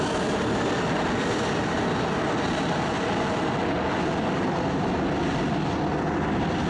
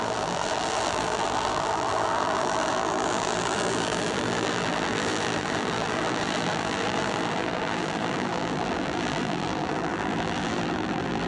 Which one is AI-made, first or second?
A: second